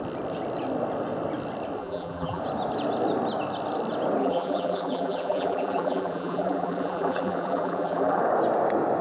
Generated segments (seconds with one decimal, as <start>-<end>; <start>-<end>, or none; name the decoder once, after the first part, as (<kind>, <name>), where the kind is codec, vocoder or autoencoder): 1.8-2.4 (vocoder, BigVGAN v2); 4.2-8.2